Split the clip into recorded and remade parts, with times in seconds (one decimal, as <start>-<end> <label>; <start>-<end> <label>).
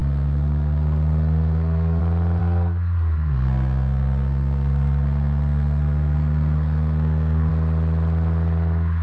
0.0-2.0 remade; 2.0-2.4 recorded; 2.4-7.5 remade; 7.5-9.0 recorded